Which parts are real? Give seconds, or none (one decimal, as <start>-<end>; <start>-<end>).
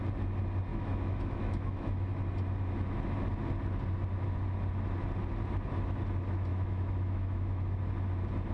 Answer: 0.0-0.7; 2.1-6.5; 7.8-8.5